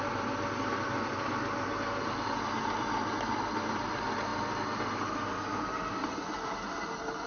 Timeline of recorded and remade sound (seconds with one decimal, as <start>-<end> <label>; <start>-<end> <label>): 0.0-7.3 recorded